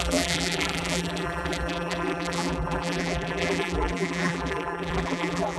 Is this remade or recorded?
remade